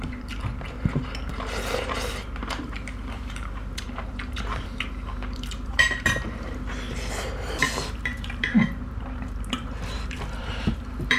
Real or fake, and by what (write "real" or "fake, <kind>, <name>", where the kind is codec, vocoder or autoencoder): fake, vocoder, BigVGAN v2